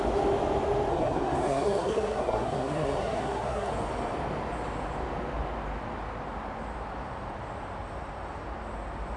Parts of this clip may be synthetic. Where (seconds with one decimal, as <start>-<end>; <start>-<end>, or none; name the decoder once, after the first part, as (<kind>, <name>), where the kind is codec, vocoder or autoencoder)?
0.9-3.7 (codec, SNAC)